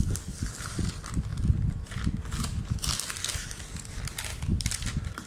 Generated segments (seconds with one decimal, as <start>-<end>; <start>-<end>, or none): 1.3-1.9; 4.3-5.3